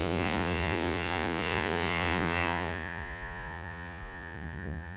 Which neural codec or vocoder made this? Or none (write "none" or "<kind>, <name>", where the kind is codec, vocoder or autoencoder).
vocoder, Vocos